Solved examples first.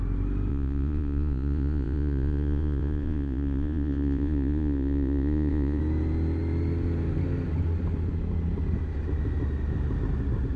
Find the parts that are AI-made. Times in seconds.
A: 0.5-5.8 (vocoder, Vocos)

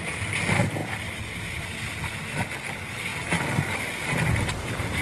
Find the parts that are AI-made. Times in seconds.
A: none

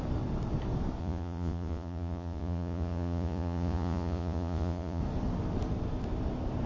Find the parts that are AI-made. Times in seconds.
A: 1.0-5.0 (vocoder, Vocos)

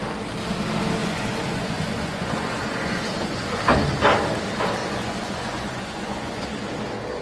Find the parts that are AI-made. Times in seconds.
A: 1.0-3.6 (vocoder, Vocos); 4.8-6.4

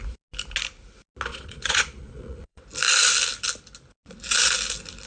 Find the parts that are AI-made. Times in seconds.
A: 1.3-2.6 (vocoder, Vocos)

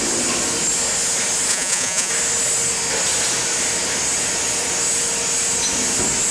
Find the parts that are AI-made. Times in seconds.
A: 1.5-2.1 (vocoder, Vocos)

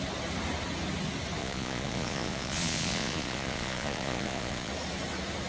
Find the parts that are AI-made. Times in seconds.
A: 1.4-4.7 (vocoder, Vocos)